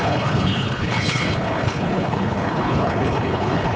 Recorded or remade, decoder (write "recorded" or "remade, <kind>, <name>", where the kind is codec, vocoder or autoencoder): remade, codec, HILCodec